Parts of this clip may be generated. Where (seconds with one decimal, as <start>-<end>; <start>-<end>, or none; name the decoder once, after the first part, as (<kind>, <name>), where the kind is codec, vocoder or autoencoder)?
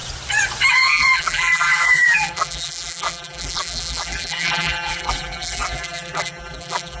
0.7-7.0 (vocoder, BigVGAN v2)